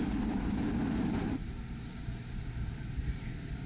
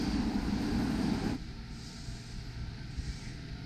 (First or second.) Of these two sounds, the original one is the second